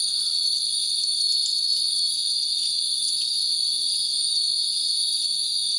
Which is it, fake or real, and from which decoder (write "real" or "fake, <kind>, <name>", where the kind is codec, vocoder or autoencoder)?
real